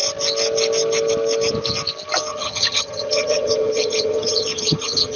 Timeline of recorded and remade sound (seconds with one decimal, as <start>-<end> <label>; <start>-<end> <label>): 0.0-2.3 recorded; 2.3-5.2 remade